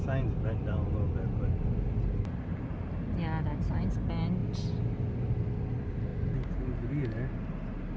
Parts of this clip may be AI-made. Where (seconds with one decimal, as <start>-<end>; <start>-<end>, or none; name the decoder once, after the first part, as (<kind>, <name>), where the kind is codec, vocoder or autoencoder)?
none